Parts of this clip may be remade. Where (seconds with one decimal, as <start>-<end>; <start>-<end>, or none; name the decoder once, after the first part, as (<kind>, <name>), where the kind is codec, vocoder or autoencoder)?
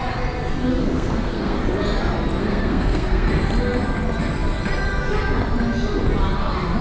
0.7-1.6 (codec, SNAC); 2.4-3.3